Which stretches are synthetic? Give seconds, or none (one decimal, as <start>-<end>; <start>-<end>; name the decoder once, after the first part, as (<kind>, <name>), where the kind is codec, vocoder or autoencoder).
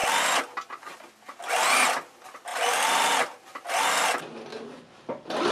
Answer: 2.5-3.7 (vocoder, BigVGAN v2)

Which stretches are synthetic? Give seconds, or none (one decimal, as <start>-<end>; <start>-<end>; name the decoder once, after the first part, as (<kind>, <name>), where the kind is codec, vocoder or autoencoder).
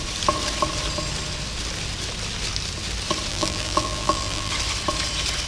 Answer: 3.3-4.5 (vocoder, BigVGAN v2)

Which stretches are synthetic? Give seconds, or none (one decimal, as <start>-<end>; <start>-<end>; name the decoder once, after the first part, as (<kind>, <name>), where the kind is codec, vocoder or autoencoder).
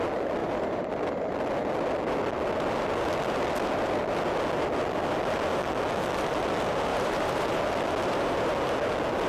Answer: 0.4-1.0 (vocoder, BigVGAN v2); 6.9-7.6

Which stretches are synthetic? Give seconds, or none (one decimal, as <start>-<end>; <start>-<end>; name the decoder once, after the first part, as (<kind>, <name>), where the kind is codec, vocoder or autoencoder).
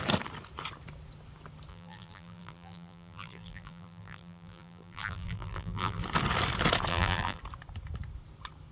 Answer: 1.7-6.0 (vocoder, BigVGAN v2); 6.9-7.4